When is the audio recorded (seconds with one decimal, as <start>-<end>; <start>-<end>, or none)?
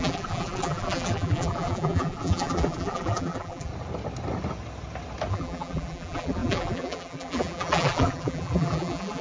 3.7-5.3